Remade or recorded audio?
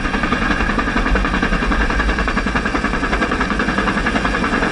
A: remade